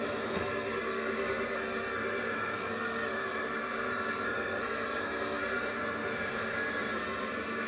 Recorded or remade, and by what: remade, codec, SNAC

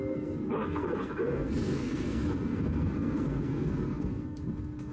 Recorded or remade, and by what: remade, codec, SNAC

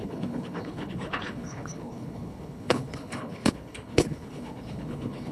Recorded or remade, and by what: remade, codec, HILCodec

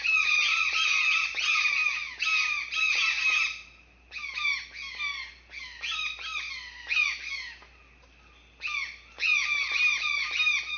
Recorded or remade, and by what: recorded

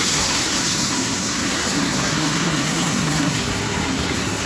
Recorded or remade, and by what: remade, codec, SNAC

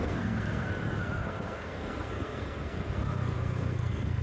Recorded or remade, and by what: remade, codec, SNAC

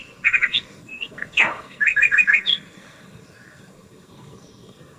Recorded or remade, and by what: remade, codec, SNAC